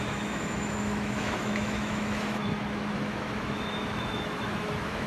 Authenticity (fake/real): fake